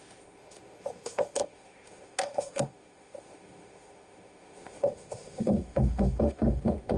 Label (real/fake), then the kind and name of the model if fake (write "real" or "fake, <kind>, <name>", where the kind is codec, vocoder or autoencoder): fake, autoencoder, DAC-VAE